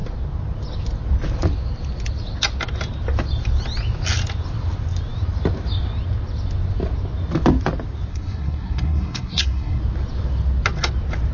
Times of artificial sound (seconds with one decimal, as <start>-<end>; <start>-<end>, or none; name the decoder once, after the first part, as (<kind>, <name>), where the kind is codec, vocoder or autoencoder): 8.1-9.8 (codec, SNAC)